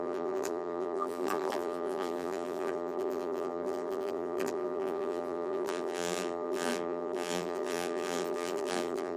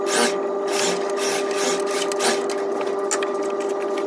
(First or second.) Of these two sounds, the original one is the second